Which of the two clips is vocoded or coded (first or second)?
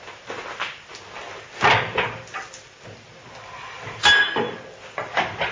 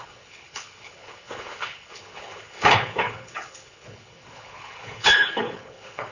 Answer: second